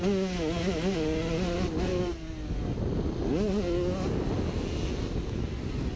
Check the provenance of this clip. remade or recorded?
recorded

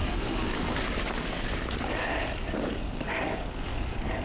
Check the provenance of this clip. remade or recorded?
remade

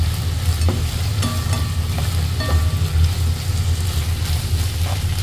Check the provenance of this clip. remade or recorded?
recorded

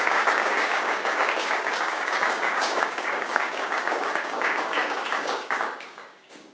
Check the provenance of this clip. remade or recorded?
remade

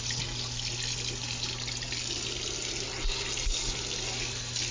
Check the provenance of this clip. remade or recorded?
recorded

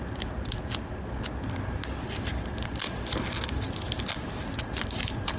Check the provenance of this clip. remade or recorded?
recorded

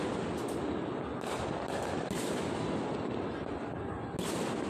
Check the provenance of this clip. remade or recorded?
recorded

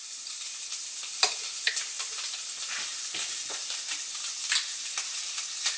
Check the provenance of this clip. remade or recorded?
recorded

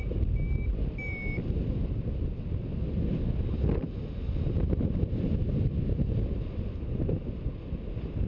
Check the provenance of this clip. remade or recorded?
recorded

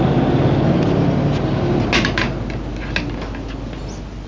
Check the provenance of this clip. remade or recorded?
recorded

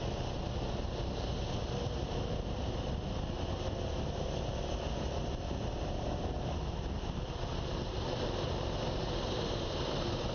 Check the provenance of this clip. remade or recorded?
recorded